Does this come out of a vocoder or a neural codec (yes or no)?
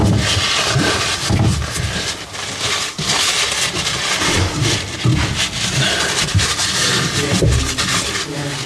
no